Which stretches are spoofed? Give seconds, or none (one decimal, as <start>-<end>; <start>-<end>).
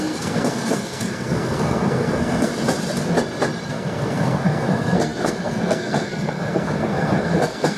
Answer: 0.0-2.5; 3.7-7.8